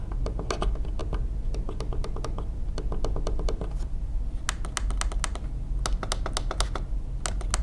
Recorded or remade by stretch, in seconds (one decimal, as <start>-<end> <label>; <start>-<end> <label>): 0.0-7.6 recorded